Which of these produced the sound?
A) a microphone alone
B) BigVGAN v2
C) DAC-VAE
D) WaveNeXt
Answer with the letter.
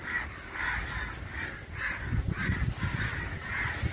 A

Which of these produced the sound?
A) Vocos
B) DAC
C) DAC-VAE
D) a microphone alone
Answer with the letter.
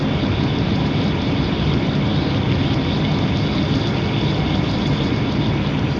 D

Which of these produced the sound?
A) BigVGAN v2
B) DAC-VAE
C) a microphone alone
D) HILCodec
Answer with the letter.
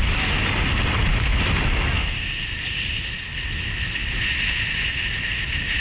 C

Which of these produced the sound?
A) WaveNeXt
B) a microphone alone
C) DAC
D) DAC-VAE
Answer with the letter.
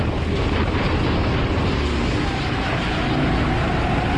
B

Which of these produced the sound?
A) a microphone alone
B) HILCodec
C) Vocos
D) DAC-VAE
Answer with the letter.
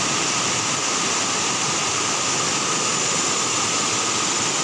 A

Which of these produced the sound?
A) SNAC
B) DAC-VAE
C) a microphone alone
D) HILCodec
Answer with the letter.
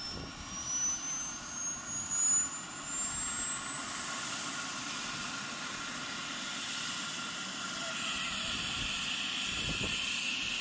C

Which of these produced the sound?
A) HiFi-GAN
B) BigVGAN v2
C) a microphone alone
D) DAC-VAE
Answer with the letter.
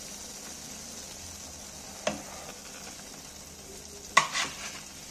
C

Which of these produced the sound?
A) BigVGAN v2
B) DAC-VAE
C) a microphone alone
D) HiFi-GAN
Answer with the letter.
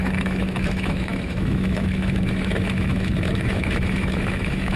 B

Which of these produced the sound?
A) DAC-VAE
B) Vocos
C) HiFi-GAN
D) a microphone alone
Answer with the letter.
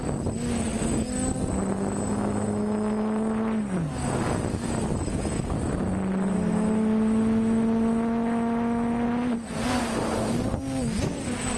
D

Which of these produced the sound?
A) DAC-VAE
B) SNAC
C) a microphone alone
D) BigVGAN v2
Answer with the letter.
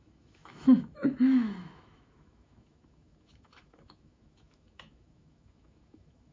A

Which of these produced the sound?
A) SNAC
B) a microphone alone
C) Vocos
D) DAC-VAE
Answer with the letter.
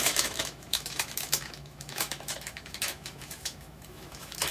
D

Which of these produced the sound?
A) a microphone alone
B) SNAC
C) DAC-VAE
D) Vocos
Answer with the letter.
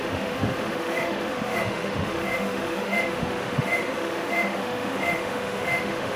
C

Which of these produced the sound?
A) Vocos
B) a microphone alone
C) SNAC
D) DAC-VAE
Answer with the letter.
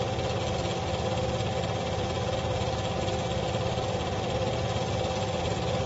B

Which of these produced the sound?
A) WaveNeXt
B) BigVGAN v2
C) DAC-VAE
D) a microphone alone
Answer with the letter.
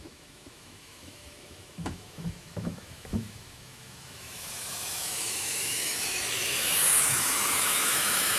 C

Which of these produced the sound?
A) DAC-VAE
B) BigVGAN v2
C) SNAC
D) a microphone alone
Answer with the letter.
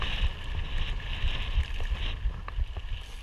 D